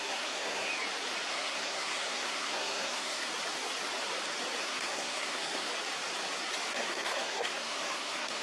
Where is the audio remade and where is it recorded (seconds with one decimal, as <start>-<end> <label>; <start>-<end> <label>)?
0.0-0.7 remade; 0.7-1.3 recorded; 1.3-3.3 remade; 3.3-4.6 recorded; 4.6-5.7 remade; 5.7-6.7 recorded; 6.7-8.4 remade